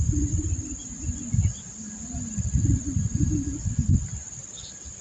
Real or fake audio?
real